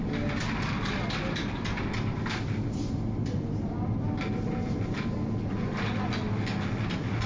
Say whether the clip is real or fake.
real